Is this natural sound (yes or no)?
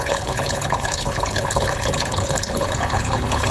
no